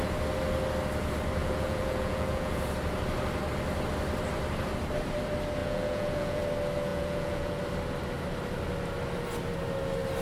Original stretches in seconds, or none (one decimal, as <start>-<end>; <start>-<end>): 0.0-1.4; 2.6-5.6; 6.4-6.9; 7.6-10.2